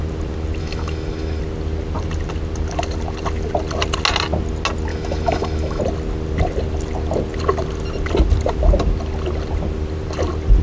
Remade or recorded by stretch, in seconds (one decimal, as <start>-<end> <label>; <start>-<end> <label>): 0.0-0.6 recorded; 0.6-1.4 remade; 1.4-4.9 recorded; 4.9-5.8 remade; 5.8-10.6 recorded